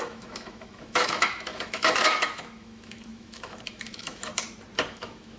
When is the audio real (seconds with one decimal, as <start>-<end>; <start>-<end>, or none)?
4.3-4.9